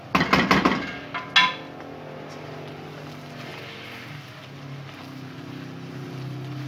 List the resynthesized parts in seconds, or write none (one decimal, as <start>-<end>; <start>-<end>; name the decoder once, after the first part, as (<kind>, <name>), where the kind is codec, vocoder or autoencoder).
none